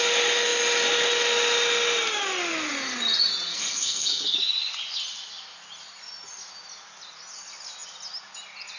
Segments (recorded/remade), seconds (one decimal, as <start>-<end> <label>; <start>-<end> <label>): 0.0-3.5 recorded; 3.5-4.2 remade; 4.2-8.8 recorded

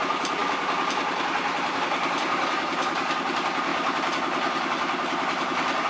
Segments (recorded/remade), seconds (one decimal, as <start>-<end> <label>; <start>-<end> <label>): 0.0-5.9 recorded

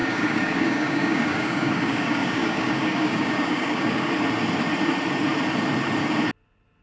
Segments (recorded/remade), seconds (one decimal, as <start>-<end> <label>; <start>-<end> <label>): 0.0-4.1 remade; 4.1-6.8 recorded

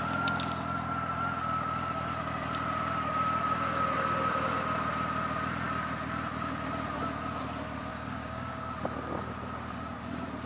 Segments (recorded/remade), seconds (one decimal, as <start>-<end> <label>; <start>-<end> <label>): 0.0-7.9 recorded; 7.9-8.6 remade; 8.6-10.5 recorded

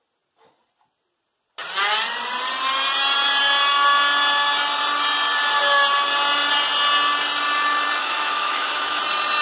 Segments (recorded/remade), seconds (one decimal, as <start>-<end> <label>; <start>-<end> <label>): 0.0-8.0 recorded; 8.0-9.0 remade; 9.0-9.4 recorded

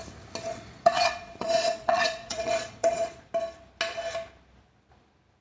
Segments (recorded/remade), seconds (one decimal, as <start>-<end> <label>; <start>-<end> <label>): 0.0-0.5 recorded; 0.5-3.3 remade; 3.3-5.4 recorded

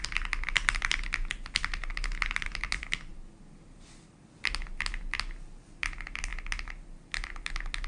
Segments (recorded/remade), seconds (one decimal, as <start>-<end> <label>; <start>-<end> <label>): 0.0-7.9 recorded

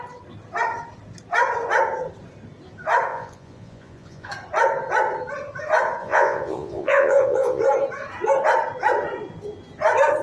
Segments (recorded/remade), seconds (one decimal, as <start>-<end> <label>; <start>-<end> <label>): 0.0-3.1 recorded; 3.1-4.3 remade; 4.3-6.0 recorded; 6.0-7.6 remade; 7.6-10.2 recorded